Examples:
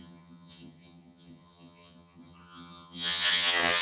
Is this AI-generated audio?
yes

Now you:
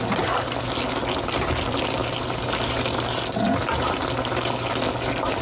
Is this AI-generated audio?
no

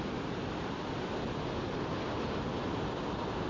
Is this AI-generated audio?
no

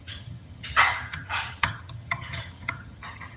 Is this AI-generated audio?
yes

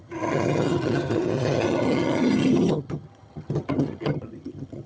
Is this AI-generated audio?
yes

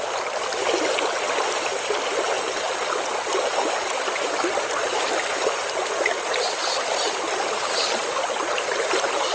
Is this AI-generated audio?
no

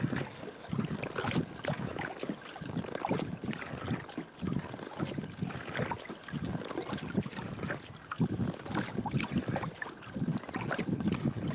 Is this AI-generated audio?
no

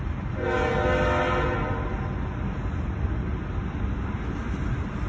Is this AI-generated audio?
no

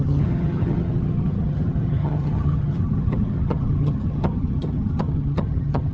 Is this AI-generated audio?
yes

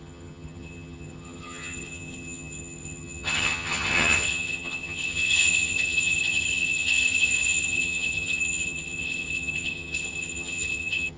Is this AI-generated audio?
yes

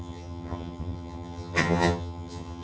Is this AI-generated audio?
yes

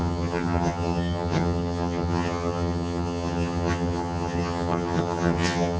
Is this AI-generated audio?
yes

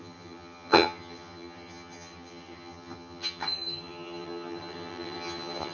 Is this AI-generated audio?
yes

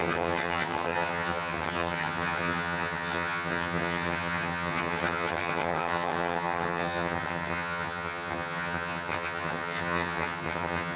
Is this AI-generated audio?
yes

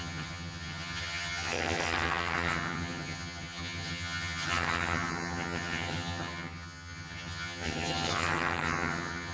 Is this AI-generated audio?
yes